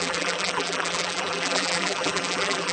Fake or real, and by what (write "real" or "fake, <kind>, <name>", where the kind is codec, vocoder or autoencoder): fake, vocoder, BigVGAN v2